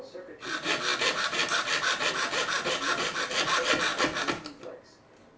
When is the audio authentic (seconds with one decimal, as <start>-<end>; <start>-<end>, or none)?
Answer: 0.0-5.4

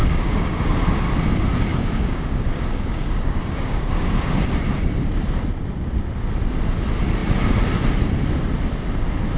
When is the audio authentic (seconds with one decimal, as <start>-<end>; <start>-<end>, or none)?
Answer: 0.6-1.7; 4.1-9.4

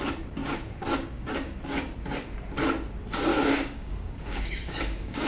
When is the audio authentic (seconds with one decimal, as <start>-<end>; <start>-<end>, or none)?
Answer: 0.0-0.4; 1.6-3.3